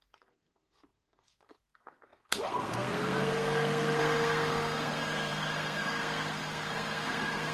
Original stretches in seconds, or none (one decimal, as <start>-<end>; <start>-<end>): none